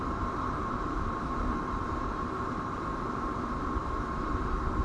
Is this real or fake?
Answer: fake